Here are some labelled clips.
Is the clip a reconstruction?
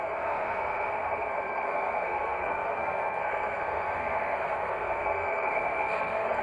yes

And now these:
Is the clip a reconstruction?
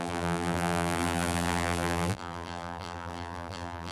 yes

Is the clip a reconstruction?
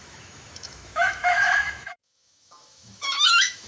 yes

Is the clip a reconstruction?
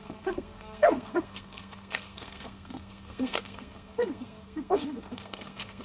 yes